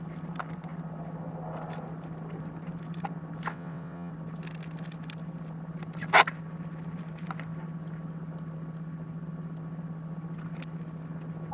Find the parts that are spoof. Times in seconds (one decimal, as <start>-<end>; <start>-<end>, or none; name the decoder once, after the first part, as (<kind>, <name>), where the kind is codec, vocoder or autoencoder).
3.5-4.1 (vocoder, WaveNeXt)